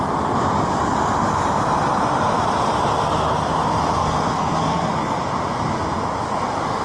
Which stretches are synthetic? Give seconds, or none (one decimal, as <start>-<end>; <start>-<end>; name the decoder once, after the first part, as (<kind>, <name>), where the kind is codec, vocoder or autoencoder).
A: 4.0-4.9 (codec, SNAC)